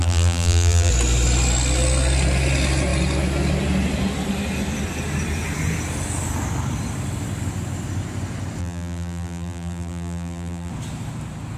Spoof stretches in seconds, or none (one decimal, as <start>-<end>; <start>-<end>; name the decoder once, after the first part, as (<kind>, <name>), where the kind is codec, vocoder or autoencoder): 0.0-0.9 (vocoder, BigVGAN v2); 8.6-10.7